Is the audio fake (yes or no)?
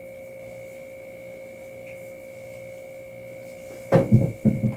no